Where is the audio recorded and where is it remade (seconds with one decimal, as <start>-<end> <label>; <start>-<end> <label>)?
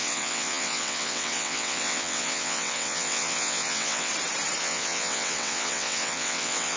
0.0-4.1 remade; 4.1-4.6 recorded; 4.6-6.8 remade